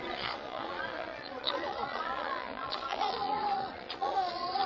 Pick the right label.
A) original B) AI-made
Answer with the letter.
B